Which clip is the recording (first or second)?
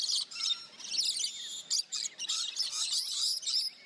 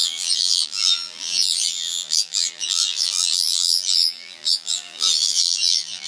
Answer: first